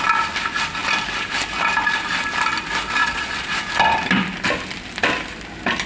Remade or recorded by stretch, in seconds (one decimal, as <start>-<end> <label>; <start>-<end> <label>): 0.0-3.0 recorded; 3.0-3.6 remade; 3.6-5.9 recorded

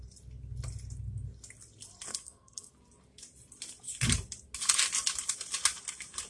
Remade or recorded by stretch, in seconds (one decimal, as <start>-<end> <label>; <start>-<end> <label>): 0.0-2.1 recorded; 2.1-2.7 remade; 2.7-6.3 recorded

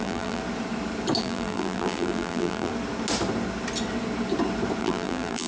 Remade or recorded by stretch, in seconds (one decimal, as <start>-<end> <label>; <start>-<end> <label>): 0.0-0.4 remade; 0.4-1.2 recorded; 1.2-2.7 remade; 2.7-4.8 recorded; 4.8-5.5 remade